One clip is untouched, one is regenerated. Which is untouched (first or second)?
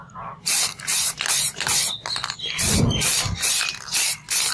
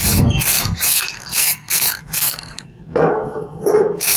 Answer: first